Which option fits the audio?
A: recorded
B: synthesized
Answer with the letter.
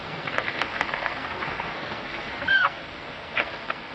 B